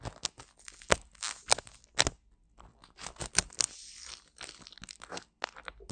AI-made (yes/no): no